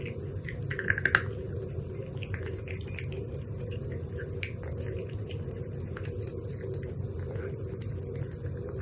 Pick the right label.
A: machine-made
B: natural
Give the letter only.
B